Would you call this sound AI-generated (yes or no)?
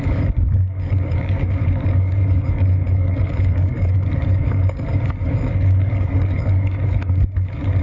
yes